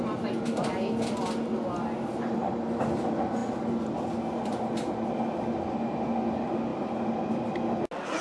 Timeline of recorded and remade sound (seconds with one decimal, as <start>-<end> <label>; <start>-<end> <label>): 0.0-8.2 recorded